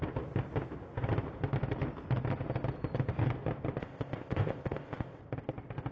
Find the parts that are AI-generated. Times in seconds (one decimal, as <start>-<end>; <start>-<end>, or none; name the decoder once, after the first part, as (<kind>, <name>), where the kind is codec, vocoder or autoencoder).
3.8-5.2 (codec, ZipCodec)